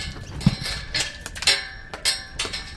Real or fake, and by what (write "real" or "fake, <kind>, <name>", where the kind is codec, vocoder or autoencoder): real